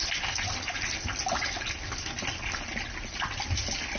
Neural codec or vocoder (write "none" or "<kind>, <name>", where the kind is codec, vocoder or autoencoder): none